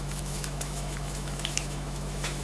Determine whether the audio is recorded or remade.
remade